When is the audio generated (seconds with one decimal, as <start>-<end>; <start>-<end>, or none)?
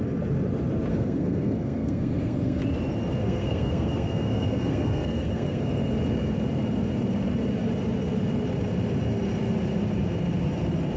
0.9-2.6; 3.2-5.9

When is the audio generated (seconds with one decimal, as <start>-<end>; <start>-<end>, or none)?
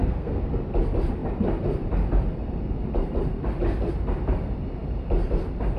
0.0-0.5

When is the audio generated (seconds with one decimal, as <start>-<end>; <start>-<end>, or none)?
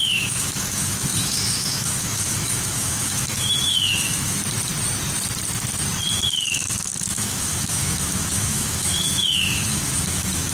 0.0-4.4; 6.1-10.5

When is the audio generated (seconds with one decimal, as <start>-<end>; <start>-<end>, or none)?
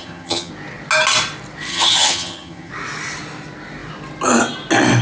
0.0-0.5; 1.7-2.7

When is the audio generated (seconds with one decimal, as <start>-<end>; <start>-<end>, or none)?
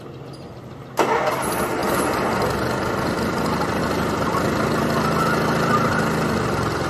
none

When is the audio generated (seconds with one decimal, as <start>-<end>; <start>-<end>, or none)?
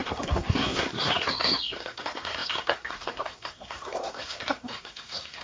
0.0-5.4